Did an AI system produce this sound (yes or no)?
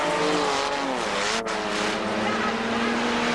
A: no